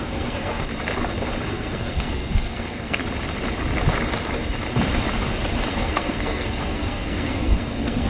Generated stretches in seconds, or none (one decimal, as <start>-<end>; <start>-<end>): 0.0-0.7; 1.5-3.0; 5.7-8.1